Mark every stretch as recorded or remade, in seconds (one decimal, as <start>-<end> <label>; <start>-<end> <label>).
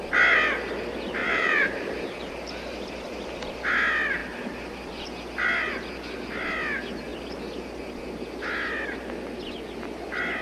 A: 0.0-1.2 recorded; 1.2-2.0 remade; 2.0-10.4 recorded